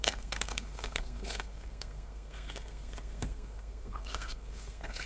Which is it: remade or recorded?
remade